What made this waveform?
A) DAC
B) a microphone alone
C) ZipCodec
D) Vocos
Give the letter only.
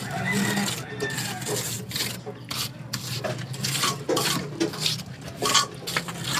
B